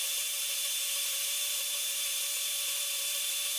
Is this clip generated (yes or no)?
yes